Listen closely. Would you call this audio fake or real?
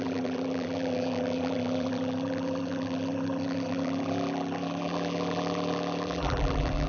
fake